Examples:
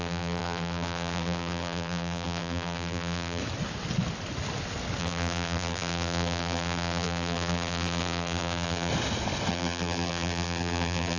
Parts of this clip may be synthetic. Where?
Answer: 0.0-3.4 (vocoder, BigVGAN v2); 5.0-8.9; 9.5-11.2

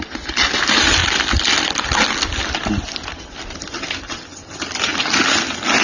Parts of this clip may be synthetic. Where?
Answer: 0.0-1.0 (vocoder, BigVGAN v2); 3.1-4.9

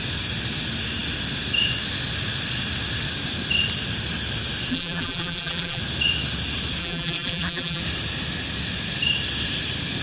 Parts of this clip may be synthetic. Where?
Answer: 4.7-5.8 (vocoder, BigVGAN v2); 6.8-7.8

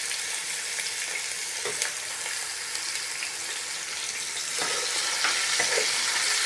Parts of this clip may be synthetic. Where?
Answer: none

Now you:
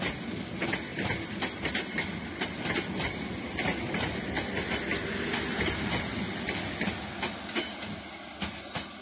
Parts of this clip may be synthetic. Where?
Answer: 0.9-1.7 (vocoder, BigVGAN v2); 6.1-6.7

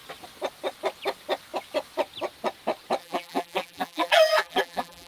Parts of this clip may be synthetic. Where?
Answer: 3.0-5.1 (vocoder, BigVGAN v2)